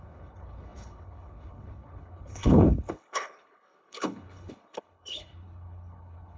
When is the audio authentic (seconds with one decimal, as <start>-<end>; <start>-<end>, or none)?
none